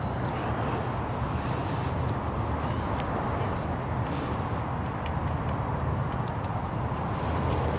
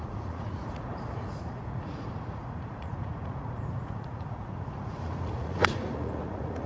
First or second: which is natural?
first